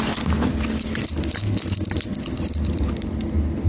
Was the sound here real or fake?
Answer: real